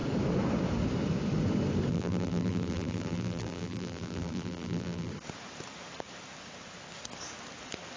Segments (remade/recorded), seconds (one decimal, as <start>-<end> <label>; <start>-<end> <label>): 0.0-1.9 recorded; 1.9-5.1 remade; 5.1-8.0 recorded